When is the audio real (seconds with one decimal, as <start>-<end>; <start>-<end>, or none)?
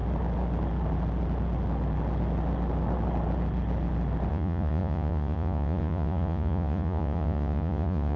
0.0-4.3